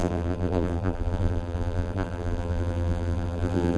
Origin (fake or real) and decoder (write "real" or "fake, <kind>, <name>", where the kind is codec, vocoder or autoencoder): fake, vocoder, BigVGAN v2